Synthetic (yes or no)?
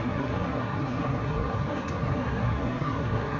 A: yes